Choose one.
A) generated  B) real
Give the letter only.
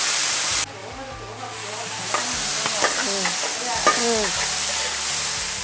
B